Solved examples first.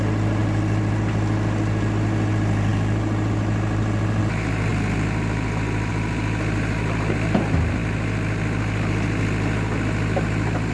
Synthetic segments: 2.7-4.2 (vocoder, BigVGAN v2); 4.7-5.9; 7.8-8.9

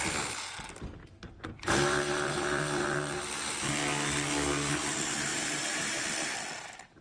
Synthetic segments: 1.0-3.2 (vocoder, BigVGAN v2); 5.3-6.0

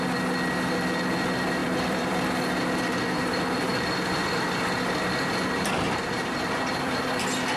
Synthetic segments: 1.6-2.3 (vocoder, BigVGAN v2); 3.7-7.0

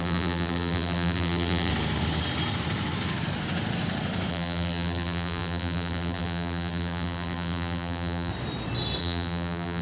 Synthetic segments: 0.0-1.7 (vocoder, BigVGAN v2); 4.3-8.3; 9.0-9.8

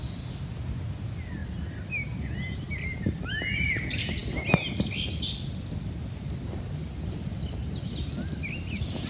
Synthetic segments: none

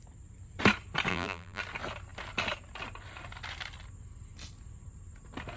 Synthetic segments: 1.1-1.6 (vocoder, BigVGAN v2)

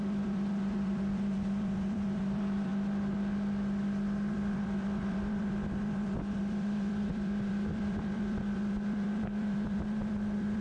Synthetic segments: 0.0-2.7 (vocoder, BigVGAN v2); 4.3-10.6